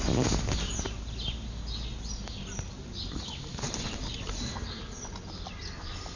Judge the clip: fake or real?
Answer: real